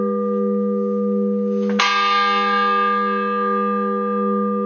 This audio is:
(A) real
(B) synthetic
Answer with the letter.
A